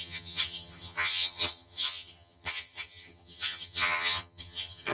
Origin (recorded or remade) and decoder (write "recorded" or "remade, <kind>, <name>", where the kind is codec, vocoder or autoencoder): remade, vocoder, HiFi-GAN